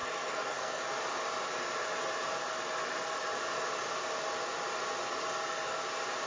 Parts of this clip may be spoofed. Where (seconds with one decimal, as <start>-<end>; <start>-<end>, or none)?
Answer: 0.0-0.8